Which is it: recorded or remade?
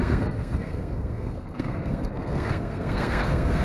remade